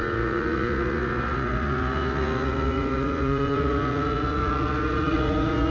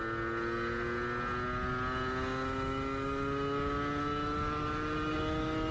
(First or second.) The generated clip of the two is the first